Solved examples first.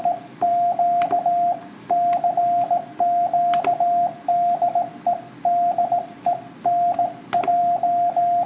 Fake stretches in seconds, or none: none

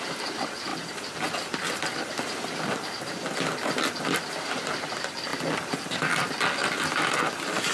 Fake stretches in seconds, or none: none

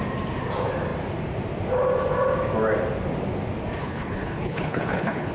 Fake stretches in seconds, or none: 3.8-5.3 (codec, HILCodec)

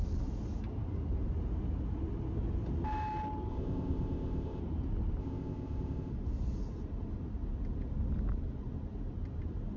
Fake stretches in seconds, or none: 3.5-4.6 (codec, ZipCodec); 5.2-6.1

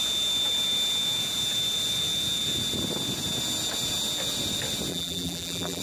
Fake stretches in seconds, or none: 4.9-5.8 (vocoder, BigVGAN v2)

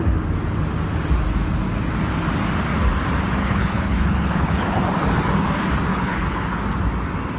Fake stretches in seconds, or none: 3.4-4.8 (codec, HILCodec); 5.9-6.4

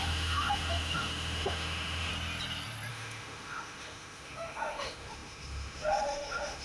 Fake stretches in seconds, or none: 0.0-2.1 (autoencoder, DAC-VAE); 2.9-6.6

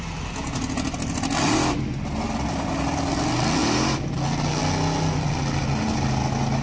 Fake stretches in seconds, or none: none